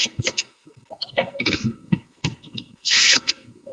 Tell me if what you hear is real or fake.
fake